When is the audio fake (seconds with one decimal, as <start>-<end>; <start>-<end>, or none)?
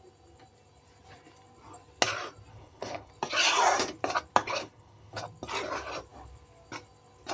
2.5-3.1; 4.4-5.2